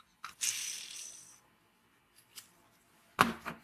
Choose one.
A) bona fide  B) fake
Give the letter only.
B